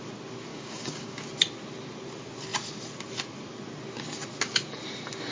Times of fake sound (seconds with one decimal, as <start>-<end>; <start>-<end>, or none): 0.5-1.3